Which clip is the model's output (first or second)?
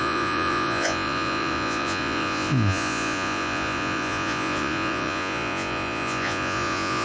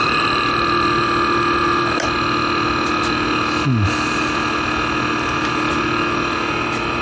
first